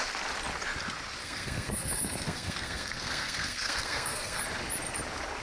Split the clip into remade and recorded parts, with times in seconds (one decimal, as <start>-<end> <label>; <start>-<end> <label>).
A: 0.0-1.2 recorded; 1.2-4.4 remade; 4.4-5.4 recorded

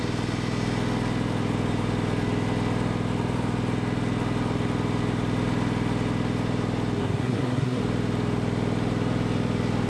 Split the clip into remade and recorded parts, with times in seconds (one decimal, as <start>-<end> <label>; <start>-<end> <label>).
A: 0.0-7.0 recorded; 7.0-7.8 remade; 7.8-9.9 recorded

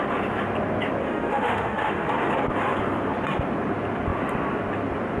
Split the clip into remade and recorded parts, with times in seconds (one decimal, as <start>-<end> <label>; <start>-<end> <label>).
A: 0.0-1.0 recorded; 1.0-2.1 remade; 2.1-5.2 recorded